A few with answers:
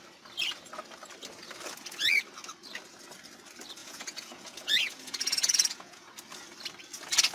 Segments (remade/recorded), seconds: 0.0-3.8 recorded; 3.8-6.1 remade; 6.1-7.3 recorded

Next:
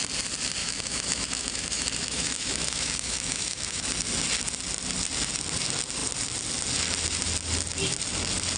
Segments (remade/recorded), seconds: 0.0-0.6 recorded; 0.6-3.8 remade; 3.8-8.6 recorded